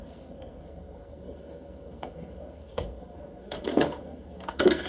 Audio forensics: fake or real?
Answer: fake